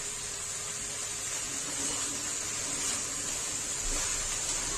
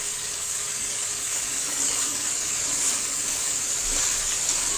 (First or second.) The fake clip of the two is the second